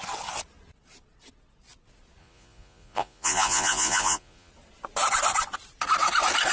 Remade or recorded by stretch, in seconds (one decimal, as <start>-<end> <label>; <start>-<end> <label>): 0.0-2.2 recorded; 2.2-4.5 remade; 4.5-6.5 recorded